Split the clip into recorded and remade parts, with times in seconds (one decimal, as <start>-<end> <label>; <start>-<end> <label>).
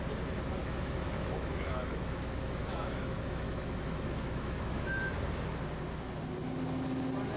0.0-0.6 recorded; 0.6-5.0 remade; 5.0-7.4 recorded